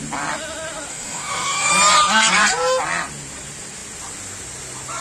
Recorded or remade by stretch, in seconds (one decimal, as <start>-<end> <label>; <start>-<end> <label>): 0.0-0.9 recorded; 0.9-1.7 remade; 1.7-5.0 recorded